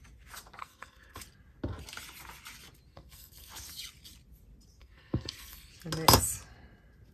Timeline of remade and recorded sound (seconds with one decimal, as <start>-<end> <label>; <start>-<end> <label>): 0.0-0.6 recorded; 0.6-1.2 remade; 1.2-2.9 recorded; 2.9-3.5 remade; 3.5-4.8 recorded; 4.8-5.7 remade; 5.7-7.1 recorded

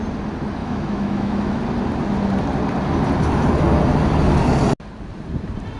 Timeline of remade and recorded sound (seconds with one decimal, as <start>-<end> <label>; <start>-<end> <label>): 0.0-0.6 recorded; 0.6-1.6 remade; 1.6-5.8 recorded